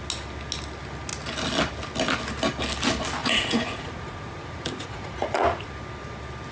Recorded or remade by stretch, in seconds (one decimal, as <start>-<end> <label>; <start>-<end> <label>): 0.0-3.2 recorded; 3.2-5.7 remade; 5.7-6.5 recorded